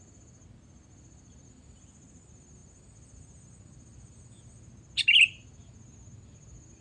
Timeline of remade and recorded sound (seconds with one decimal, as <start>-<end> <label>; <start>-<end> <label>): 0.0-6.8 recorded